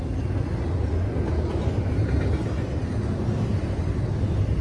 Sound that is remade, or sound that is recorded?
recorded